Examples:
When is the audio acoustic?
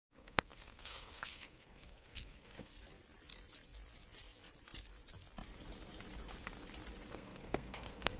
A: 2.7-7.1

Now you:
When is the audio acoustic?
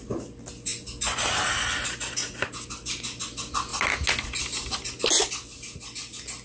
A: 0.0-6.4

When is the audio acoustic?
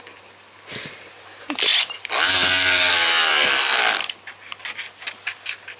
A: 0.0-5.8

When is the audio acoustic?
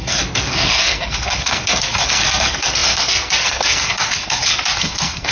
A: none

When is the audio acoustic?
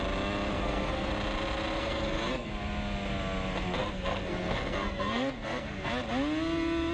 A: 0.0-0.5; 1.1-1.8; 2.5-3.8; 5.9-6.9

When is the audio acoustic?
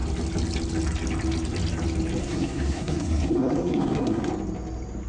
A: 0.0-2.2; 4.3-5.1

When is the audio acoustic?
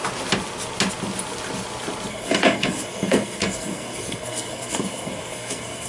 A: 0.0-2.1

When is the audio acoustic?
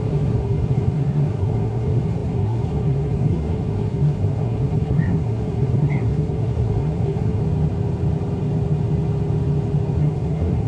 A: 7.4-10.0